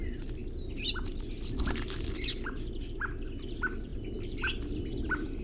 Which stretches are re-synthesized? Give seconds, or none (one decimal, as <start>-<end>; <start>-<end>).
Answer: none